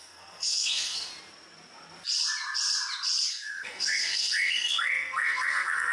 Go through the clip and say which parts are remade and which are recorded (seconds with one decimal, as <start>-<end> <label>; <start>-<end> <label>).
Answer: 0.0-1.1 remade; 1.1-3.3 recorded; 3.3-5.9 remade